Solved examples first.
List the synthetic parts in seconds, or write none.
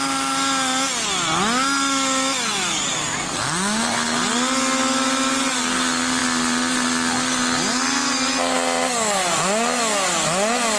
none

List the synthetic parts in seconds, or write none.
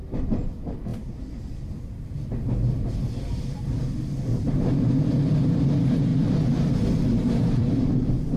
0.0-6.1 (vocoder, BigVGAN v2); 7.4-8.4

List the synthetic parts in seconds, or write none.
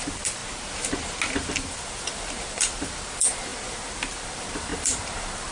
0.0-0.4 (vocoder, BigVGAN v2); 1.5-5.5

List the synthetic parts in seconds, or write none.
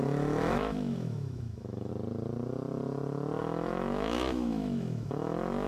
0.0-1.9 (autoencoder, DAC-VAE); 3.4-5.7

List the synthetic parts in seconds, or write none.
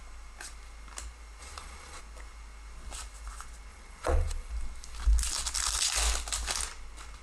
1.4-2.0 (vocoder, Vocos); 3.7-4.5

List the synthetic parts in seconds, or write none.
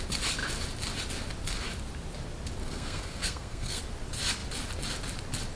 2.6-3.8 (codec, SNAC)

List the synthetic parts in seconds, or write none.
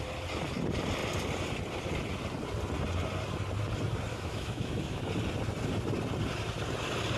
4.1-5.0 (autoencoder, DAC-VAE)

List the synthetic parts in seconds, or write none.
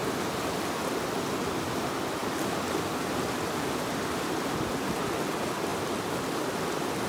none